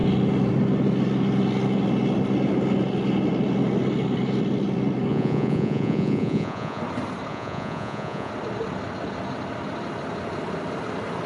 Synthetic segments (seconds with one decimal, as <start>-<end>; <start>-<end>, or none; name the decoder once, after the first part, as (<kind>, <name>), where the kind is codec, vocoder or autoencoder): 5.1-6.8 (vocoder, Vocos); 7.3-8.3